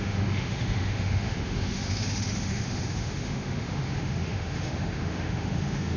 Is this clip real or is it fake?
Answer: fake